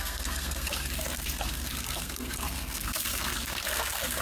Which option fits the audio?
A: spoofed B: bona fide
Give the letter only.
A